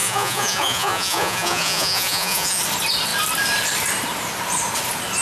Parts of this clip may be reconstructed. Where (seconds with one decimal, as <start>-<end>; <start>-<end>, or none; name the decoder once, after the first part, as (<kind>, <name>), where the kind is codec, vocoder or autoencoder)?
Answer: 0.0-2.6 (vocoder, Vocos)